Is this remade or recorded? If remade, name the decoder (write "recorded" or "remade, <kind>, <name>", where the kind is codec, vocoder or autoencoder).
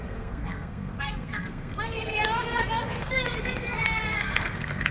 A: remade, codec, SNAC